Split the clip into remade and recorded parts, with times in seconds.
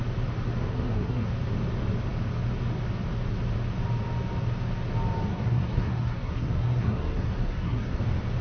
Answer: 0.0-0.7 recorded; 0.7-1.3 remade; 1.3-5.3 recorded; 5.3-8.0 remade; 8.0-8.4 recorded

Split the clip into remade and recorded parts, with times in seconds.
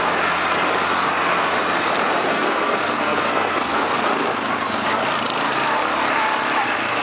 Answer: 0.0-2.3 recorded; 2.3-4.0 remade; 4.0-7.0 recorded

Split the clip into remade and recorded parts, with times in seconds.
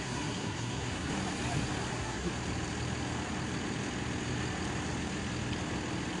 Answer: 0.0-1.1 remade; 1.1-1.9 recorded; 1.9-2.3 remade; 2.3-6.2 recorded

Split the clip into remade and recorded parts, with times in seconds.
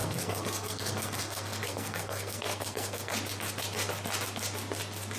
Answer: 0.0-3.1 remade; 3.1-5.2 recorded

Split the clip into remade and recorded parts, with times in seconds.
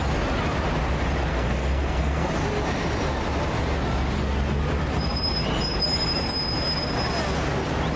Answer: 0.0-1.3 recorded; 1.3-2.3 remade; 2.3-8.0 recorded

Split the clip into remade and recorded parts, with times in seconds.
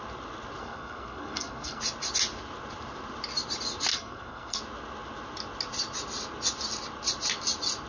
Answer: 0.0-0.6 recorded; 0.6-1.8 remade; 1.8-3.9 recorded; 3.9-4.6 remade; 4.6-7.9 recorded